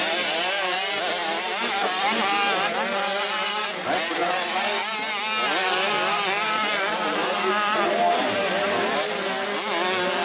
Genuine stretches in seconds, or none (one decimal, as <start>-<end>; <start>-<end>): 0.0-1.2; 2.2-10.2

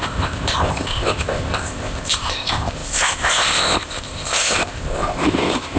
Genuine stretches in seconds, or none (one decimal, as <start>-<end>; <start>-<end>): none